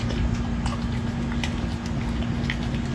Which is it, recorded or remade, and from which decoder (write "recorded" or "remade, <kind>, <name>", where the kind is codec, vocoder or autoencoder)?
recorded